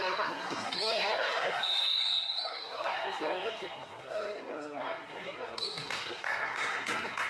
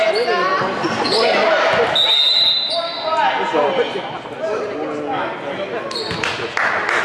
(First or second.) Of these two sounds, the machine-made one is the first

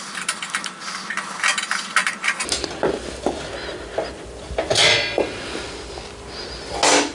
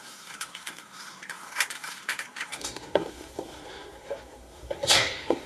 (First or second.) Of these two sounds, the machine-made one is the second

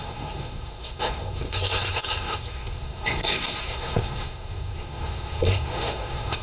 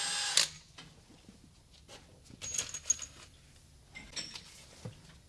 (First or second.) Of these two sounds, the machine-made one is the first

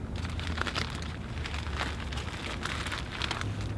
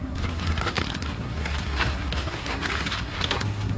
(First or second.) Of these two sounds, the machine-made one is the second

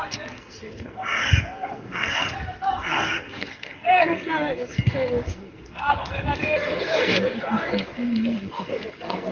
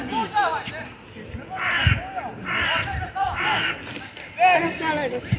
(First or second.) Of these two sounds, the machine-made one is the first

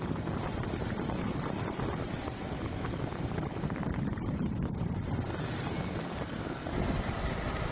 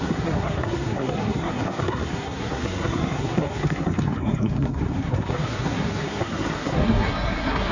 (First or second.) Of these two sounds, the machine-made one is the second